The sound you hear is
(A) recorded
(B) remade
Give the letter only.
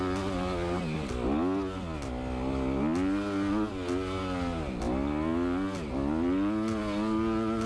A